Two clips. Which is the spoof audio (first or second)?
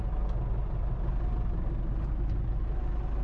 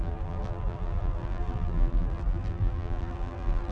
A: second